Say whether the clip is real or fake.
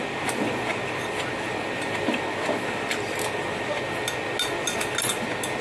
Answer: real